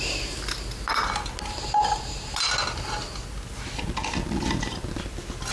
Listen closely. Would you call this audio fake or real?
real